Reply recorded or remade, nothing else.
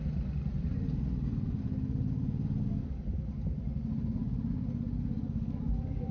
recorded